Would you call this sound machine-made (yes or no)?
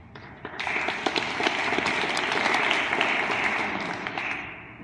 no